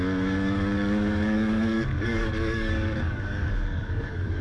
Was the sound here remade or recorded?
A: remade